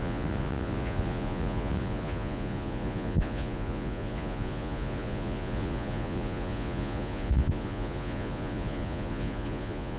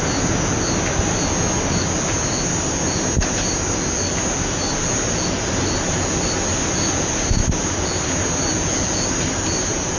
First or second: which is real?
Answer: second